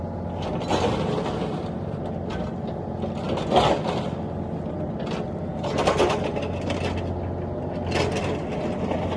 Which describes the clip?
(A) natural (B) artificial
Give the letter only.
A